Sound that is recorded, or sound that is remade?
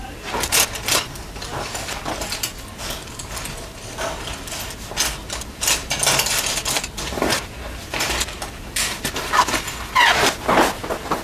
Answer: recorded